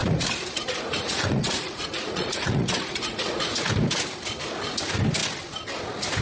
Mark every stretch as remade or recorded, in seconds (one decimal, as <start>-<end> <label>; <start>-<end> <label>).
0.0-3.7 remade; 3.7-6.2 recorded